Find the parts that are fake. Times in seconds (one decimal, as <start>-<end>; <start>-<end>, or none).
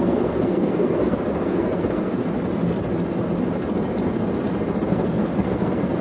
0.0-2.2; 4.9-6.0